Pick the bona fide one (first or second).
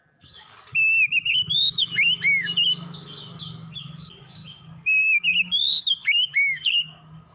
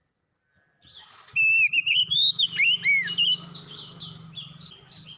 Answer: second